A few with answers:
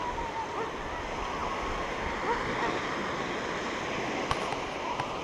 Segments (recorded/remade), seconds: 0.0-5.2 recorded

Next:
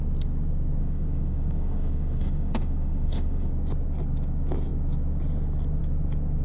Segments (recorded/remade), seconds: 0.0-0.8 recorded; 0.8-3.5 remade; 3.5-6.4 recorded

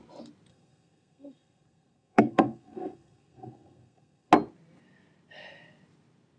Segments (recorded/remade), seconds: 0.0-0.5 recorded; 0.5-4.3 remade; 4.3-6.4 recorded

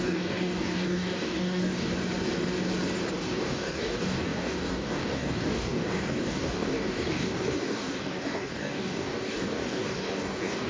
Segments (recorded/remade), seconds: 0.0-1.9 remade; 1.9-3.1 recorded; 3.1-10.7 remade

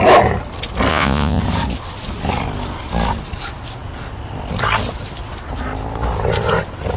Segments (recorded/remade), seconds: 0.0-0.9 recorded; 0.9-1.4 remade; 1.4-7.0 recorded

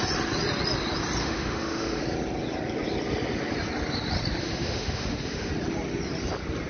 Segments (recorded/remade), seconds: 0.0-1.2 recorded; 1.2-2.0 remade; 2.0-4.4 recorded; 4.4-5.5 remade; 5.5-6.7 recorded